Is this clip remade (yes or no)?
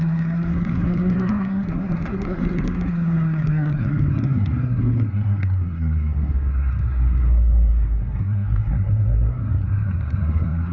yes